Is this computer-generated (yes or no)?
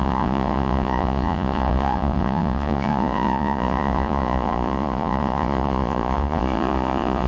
yes